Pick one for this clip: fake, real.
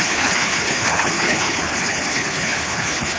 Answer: fake